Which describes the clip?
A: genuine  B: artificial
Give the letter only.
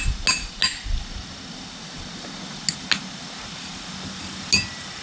A